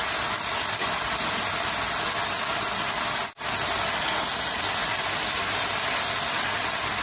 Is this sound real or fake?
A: real